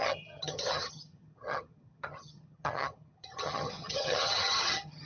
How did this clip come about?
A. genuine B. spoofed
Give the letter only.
B